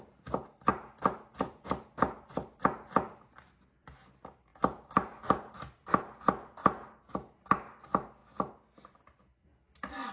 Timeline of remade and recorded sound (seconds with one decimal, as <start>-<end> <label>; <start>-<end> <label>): 0.0-4.5 recorded; 4.5-5.5 remade; 5.5-10.1 recorded